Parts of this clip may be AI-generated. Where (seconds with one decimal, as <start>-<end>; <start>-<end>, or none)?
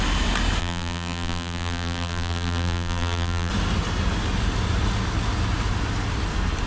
0.6-3.5